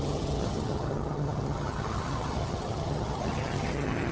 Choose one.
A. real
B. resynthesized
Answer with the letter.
B